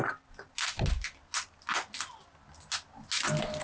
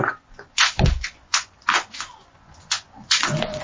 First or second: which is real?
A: first